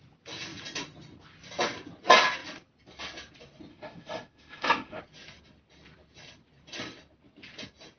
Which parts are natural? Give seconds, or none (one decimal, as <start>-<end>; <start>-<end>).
0.0-3.7; 5.0-8.0